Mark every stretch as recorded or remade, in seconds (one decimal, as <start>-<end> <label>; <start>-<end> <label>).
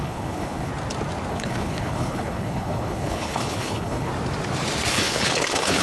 0.0-0.7 remade; 0.7-1.3 recorded; 1.3-4.1 remade; 4.1-4.9 recorded; 4.9-5.8 remade